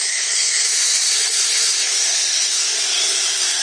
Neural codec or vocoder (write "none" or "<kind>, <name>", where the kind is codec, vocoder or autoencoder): codec, SNAC